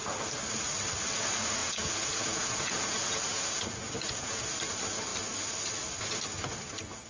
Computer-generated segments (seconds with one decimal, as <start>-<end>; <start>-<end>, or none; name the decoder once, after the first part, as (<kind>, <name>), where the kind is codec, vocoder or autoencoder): 1.6-4.4 (vocoder, Vocos)